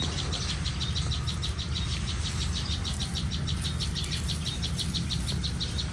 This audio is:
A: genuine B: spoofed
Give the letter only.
A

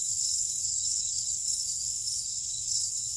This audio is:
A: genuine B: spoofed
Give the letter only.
B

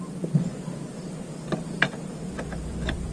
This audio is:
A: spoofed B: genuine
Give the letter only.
B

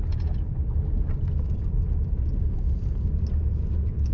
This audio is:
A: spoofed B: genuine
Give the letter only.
B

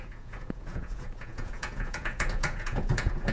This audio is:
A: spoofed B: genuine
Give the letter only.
A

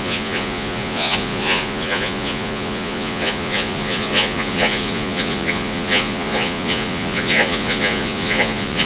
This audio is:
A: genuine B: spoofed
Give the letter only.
B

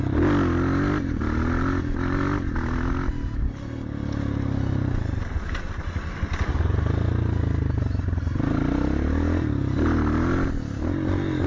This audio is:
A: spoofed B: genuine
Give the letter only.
B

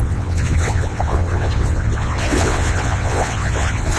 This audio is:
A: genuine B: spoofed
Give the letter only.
B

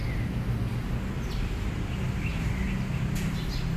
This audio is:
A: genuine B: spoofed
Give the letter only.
A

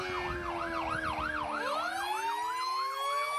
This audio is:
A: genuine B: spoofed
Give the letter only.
A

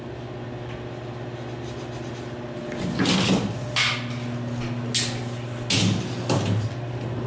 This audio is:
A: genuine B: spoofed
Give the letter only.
A